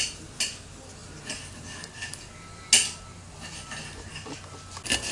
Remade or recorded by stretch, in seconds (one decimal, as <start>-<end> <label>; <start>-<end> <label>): 0.0-5.1 recorded